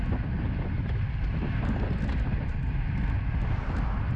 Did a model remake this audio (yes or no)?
no